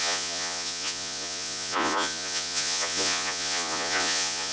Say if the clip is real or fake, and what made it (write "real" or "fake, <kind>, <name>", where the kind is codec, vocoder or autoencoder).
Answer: fake, vocoder, Vocos